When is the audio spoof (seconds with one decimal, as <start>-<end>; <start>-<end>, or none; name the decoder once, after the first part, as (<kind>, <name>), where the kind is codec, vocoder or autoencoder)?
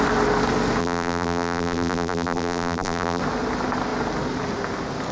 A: 0.8-3.2 (vocoder, BigVGAN v2)